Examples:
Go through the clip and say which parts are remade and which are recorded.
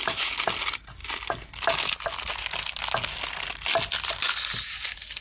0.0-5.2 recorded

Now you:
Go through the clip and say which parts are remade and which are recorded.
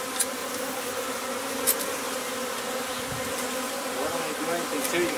0.0-5.2 recorded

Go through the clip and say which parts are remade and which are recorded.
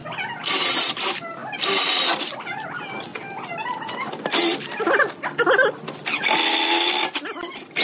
0.0-7.8 recorded